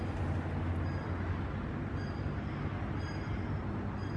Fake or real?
real